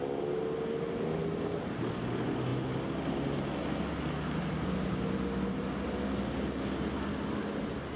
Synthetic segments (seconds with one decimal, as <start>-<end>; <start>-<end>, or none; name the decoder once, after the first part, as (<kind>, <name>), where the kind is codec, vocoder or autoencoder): none